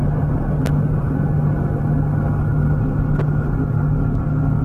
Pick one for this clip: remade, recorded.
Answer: recorded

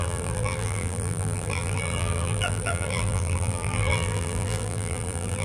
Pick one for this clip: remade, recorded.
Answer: remade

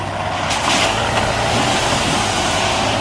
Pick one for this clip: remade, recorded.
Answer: recorded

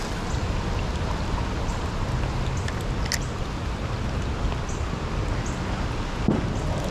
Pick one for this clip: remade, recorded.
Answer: recorded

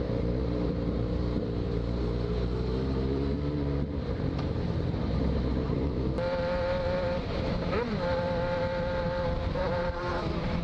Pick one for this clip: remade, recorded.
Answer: remade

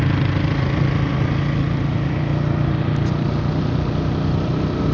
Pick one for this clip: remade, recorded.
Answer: recorded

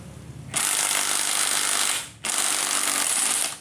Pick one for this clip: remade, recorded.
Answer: recorded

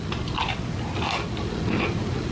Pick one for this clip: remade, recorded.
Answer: recorded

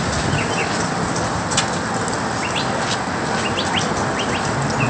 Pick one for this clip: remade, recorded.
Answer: recorded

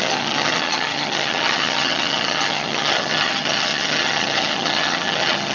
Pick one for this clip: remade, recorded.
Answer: remade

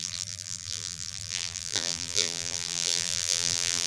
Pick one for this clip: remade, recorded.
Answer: remade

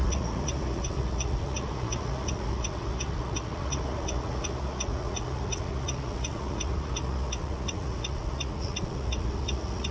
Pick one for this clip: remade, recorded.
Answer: remade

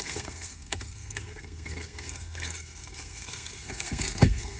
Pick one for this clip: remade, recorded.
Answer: remade